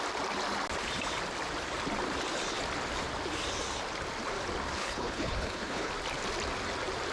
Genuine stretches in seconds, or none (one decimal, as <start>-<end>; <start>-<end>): 0.0-4.8; 5.9-7.1